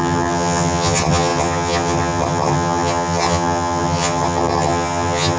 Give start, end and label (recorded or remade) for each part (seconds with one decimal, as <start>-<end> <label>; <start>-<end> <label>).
0.0-5.4 remade